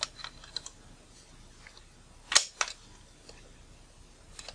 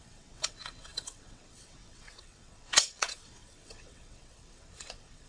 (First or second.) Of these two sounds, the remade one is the second